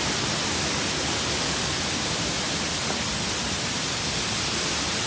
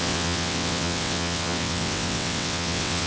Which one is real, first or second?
first